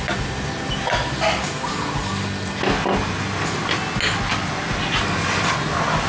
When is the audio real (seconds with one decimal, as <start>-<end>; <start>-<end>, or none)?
0.0-6.1